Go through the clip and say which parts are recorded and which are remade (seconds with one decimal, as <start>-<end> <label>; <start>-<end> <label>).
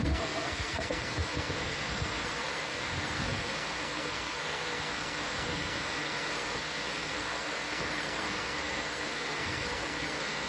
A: 0.0-10.5 remade